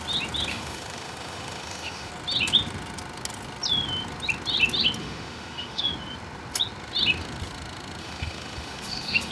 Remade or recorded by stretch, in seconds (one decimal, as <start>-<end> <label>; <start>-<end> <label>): 0.0-0.5 recorded; 0.5-2.1 remade; 2.1-5.0 recorded; 5.0-5.9 remade; 5.9-8.0 recorded; 8.0-9.3 remade